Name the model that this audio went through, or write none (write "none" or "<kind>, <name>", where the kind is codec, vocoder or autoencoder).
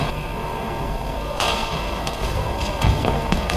codec, SNAC